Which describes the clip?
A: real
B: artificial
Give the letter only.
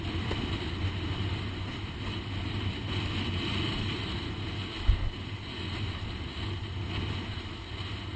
A